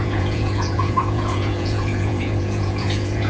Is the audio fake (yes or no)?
yes